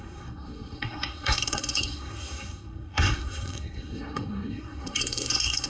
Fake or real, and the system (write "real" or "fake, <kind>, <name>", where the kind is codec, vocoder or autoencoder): fake, codec, SNAC